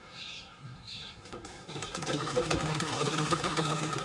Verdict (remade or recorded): remade